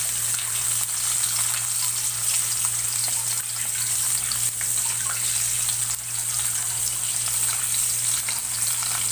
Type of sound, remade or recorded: recorded